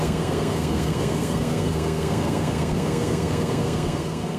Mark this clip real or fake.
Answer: fake